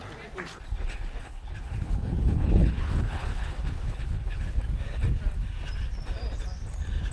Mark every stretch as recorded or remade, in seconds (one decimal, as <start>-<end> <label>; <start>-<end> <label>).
0.0-0.5 recorded; 0.5-4.6 remade; 4.6-7.1 recorded